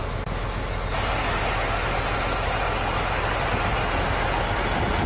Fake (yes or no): no